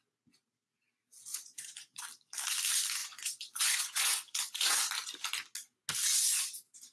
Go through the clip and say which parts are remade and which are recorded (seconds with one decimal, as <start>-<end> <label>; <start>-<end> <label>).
0.0-1.3 recorded; 1.3-2.0 remade; 2.0-3.0 recorded; 3.0-4.7 remade; 4.7-6.9 recorded